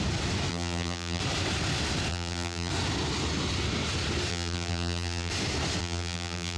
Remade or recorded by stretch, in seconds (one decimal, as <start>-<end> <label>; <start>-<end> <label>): 0.0-0.5 recorded; 0.5-1.2 remade; 1.2-2.1 recorded; 2.1-2.7 remade; 2.7-4.3 recorded; 4.3-5.3 remade; 5.3-5.8 recorded; 5.8-6.6 remade

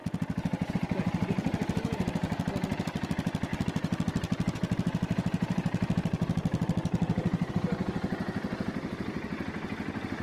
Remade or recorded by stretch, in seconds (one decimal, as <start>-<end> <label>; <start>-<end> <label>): 0.0-3.5 recorded; 3.5-7.5 remade; 7.5-10.2 recorded

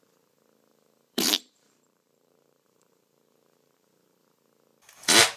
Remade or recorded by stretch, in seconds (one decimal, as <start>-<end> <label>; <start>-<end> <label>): 0.0-0.7 recorded; 0.7-3.9 remade; 3.9-5.4 recorded